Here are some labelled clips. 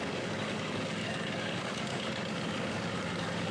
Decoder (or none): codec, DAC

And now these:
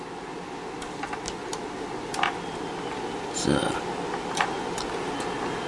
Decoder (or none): none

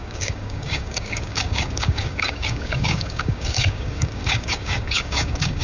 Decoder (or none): codec, DAC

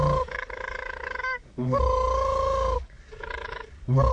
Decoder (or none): codec, DAC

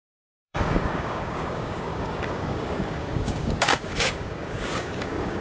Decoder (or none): codec, DAC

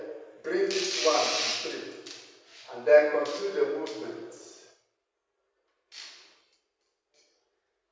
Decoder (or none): none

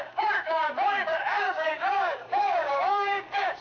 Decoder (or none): codec, DAC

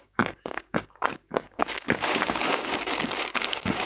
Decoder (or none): codec, DAC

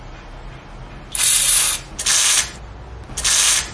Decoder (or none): none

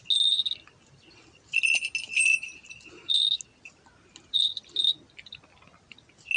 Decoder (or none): none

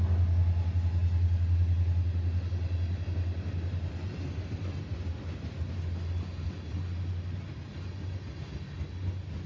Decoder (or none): none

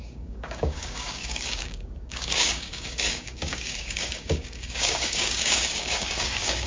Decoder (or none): codec, DAC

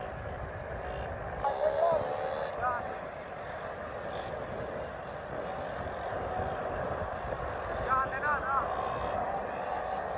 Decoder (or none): none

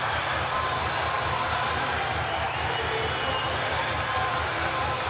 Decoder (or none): none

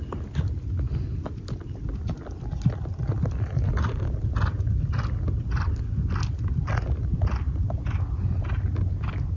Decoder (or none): none